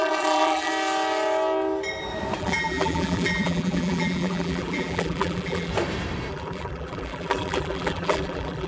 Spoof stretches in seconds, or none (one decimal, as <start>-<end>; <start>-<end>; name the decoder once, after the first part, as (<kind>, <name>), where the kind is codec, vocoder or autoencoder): 0.0-0.7 (vocoder, BigVGAN v2); 2.4-5.7; 6.3-8.7